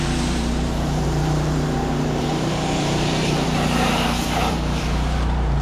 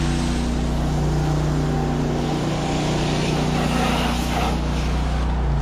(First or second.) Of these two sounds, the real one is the second